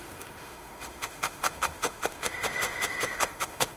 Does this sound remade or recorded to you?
remade